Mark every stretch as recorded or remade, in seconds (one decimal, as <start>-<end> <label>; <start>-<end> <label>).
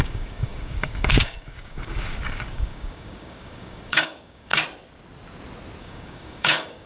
0.0-4.5 remade; 4.5-5.8 recorded; 5.8-6.9 remade